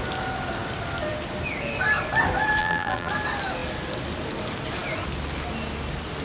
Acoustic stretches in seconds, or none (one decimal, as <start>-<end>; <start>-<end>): 0.0-2.6; 3.1-6.2